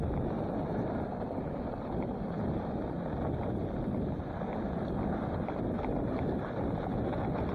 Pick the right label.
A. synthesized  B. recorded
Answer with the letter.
B